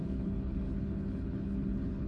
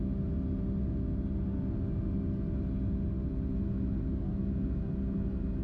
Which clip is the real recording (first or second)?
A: second